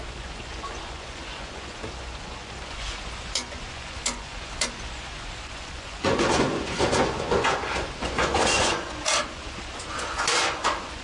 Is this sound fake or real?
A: fake